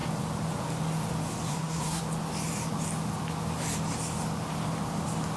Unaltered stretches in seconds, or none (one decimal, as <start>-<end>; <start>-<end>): 0.0-1.5; 2.0-5.4